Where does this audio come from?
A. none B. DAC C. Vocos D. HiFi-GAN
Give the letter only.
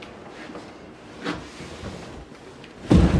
A